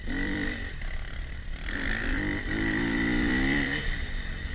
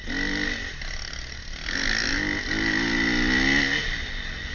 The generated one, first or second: first